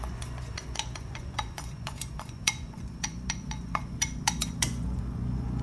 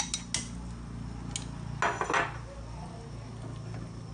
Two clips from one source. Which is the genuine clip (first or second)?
second